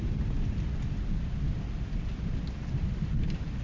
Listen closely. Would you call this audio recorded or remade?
recorded